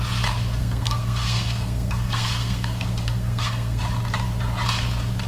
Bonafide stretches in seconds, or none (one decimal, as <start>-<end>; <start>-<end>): 0.0-0.6; 3.8-5.3